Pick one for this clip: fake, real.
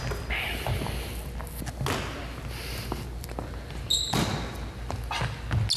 real